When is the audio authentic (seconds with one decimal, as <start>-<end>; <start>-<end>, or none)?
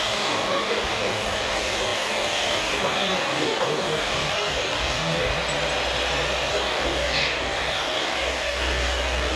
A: 5.3-6.5